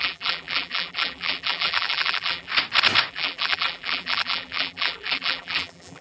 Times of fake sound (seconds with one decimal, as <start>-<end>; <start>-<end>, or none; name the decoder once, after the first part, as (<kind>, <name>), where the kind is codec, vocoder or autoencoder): 0.0-2.5 (vocoder, BigVGAN v2); 3.1-6.0